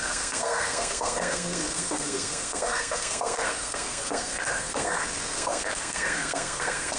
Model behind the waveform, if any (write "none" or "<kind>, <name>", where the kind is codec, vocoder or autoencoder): codec, SNAC